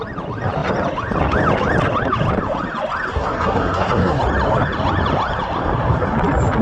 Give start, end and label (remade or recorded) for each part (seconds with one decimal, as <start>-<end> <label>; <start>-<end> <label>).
0.0-3.1 recorded; 3.1-4.2 remade; 4.2-6.6 recorded

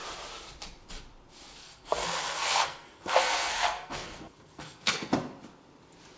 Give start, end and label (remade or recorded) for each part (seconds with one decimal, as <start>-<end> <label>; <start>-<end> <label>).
0.0-1.6 recorded; 1.6-5.1 remade; 5.1-6.2 recorded